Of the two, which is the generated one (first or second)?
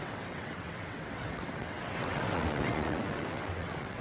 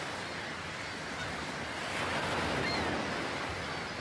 first